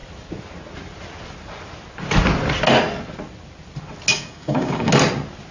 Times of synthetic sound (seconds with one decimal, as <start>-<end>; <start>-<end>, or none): 4.1-4.9